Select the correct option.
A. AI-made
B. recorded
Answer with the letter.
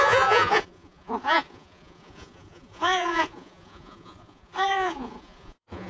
A